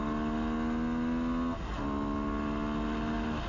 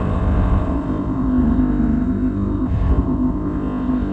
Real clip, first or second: first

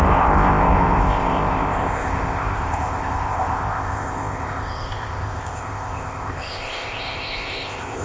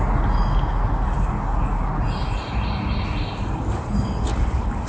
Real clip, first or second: second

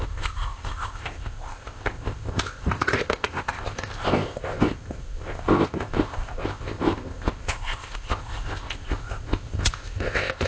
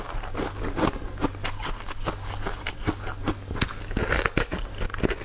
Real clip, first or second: second